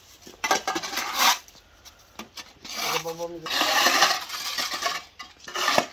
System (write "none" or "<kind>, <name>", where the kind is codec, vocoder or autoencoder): none